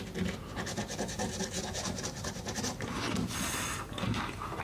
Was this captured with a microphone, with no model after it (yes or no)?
yes